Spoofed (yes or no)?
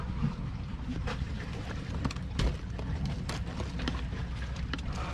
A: no